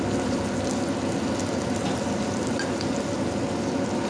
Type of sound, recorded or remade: recorded